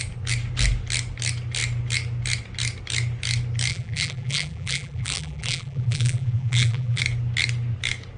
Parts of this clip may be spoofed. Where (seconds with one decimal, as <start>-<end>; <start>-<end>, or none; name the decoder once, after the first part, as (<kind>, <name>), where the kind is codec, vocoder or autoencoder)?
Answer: 3.7-7.0 (vocoder, BigVGAN v2)